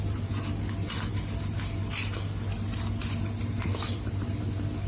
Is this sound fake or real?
real